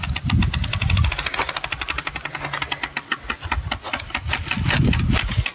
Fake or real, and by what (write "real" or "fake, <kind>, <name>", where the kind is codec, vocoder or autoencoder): real